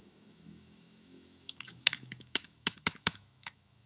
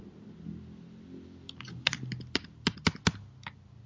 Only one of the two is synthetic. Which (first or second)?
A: first